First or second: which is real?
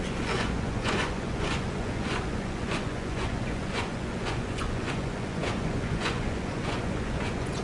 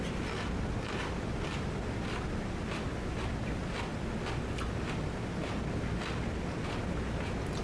second